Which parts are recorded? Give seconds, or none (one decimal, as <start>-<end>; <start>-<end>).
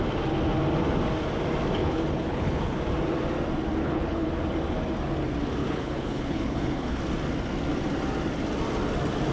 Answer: 0.0-1.8; 2.8-3.8; 4.3-5.6; 7.0-9.3